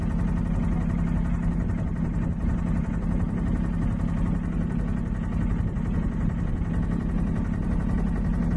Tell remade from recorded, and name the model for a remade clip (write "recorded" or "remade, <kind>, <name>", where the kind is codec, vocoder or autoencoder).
recorded